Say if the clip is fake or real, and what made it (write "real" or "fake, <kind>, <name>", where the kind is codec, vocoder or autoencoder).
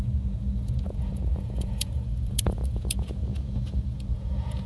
fake, vocoder, Vocos